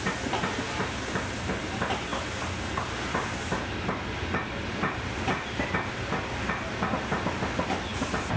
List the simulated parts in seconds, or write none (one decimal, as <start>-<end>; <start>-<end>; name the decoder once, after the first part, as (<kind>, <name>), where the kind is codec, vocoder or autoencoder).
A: none